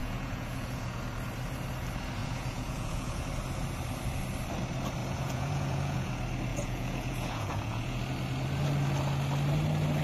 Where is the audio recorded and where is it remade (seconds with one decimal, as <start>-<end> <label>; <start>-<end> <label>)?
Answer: 0.0-1.0 remade; 1.0-2.2 recorded; 2.2-3.2 remade; 3.2-5.0 recorded; 5.0-6.1 remade; 6.1-6.5 recorded; 6.5-8.0 remade; 8.0-10.0 recorded